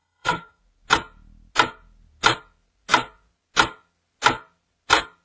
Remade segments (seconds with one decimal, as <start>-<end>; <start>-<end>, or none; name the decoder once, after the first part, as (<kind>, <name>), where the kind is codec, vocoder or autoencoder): 0.0-0.6 (codec, SNAC)